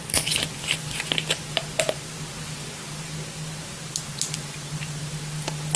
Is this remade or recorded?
recorded